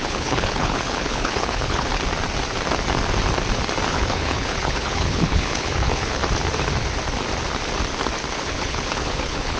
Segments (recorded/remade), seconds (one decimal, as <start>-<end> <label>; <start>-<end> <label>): 0.0-1.9 remade; 1.9-3.9 recorded; 3.9-6.2 remade; 6.2-8.3 recorded; 8.3-9.6 remade